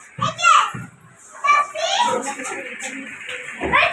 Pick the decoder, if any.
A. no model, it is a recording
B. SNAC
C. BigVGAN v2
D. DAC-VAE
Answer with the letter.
A